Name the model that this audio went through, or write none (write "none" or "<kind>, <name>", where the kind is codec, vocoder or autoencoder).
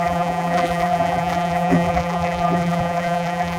vocoder, BigVGAN v2